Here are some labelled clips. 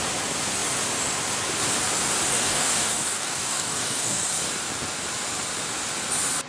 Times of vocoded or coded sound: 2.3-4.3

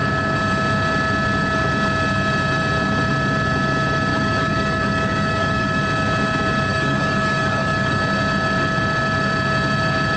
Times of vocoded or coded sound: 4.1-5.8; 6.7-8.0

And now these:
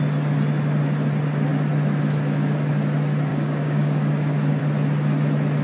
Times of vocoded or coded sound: 3.3-4.6

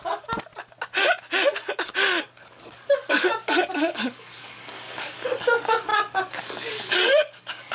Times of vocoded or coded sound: 0.0-0.5; 2.2-7.7

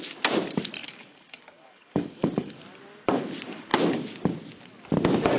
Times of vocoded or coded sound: 0.8-2.6

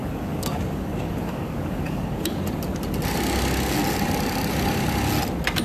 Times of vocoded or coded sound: 0.0-2.4

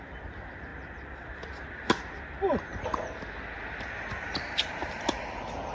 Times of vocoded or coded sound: none

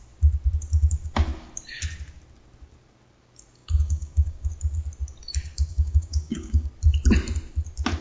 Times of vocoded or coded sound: 3.6-4.5; 5.7-6.7